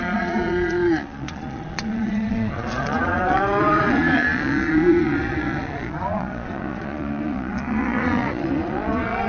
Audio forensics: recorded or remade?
remade